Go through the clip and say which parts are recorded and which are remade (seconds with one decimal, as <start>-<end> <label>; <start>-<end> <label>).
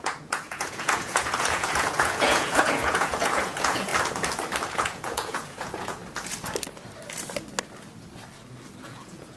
0.0-3.9 remade; 3.9-4.7 recorded; 4.7-6.0 remade; 6.0-8.8 recorded; 8.8-9.4 remade